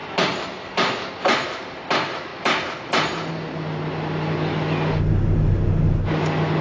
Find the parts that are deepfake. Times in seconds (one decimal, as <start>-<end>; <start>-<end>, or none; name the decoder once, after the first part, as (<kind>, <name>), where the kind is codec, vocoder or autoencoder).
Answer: none